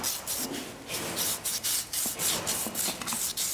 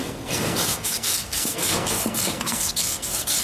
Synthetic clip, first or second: second